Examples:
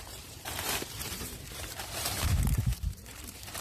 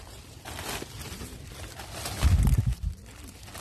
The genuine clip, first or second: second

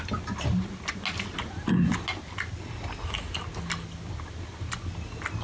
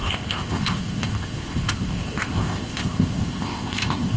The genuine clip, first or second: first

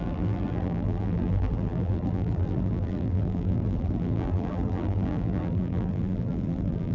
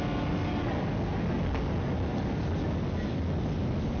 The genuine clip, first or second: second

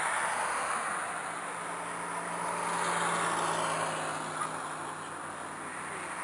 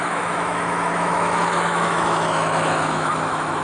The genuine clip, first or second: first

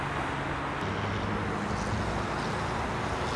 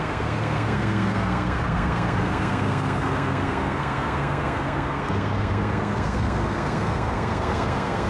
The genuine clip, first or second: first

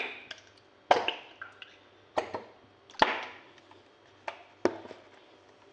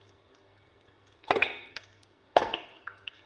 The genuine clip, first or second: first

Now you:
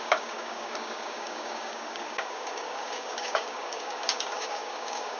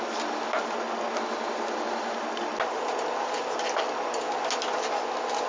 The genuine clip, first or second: second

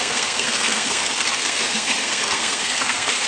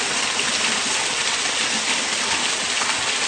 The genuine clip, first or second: second